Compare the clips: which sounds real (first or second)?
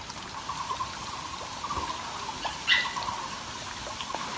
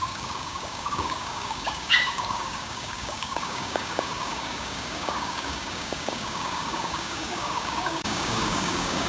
first